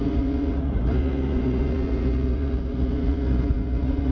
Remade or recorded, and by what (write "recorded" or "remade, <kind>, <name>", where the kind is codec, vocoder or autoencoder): remade, vocoder, Vocos